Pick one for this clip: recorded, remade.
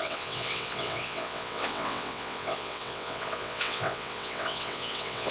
remade